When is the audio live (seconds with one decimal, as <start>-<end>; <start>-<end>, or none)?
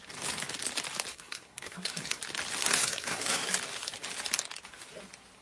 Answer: 0.0-1.1; 2.2-2.6; 3.5-5.4